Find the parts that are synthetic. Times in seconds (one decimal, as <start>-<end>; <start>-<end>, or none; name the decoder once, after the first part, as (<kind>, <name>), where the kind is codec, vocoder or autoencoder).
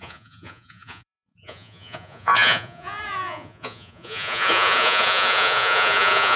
0.0-6.4 (vocoder, Vocos)